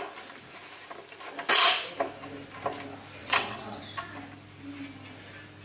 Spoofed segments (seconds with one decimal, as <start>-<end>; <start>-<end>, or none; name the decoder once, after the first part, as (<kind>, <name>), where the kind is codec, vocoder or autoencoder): 3.2-3.8 (vocoder, WaveNeXt)